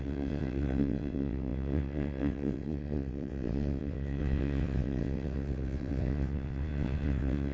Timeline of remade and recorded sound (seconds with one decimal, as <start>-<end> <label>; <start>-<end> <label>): 0.0-7.5 remade